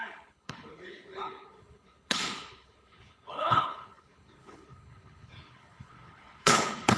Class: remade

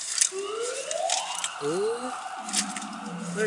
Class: recorded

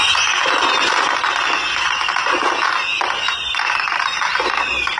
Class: recorded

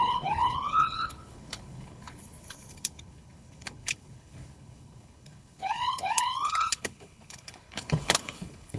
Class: remade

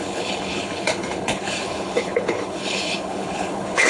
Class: remade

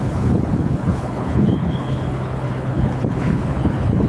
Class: remade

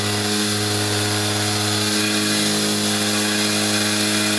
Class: recorded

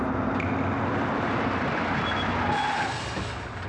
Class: recorded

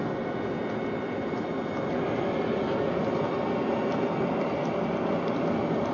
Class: recorded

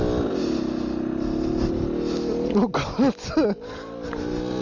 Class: recorded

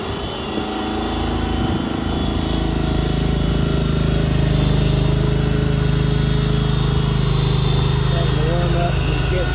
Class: recorded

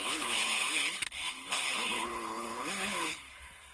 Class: remade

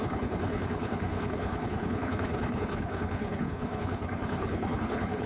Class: remade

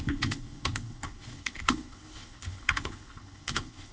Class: remade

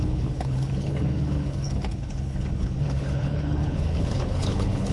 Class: remade